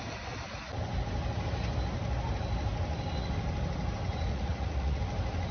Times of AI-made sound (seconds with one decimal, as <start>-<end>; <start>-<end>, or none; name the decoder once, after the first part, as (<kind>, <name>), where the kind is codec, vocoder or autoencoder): 4.3-5.0 (vocoder, Vocos)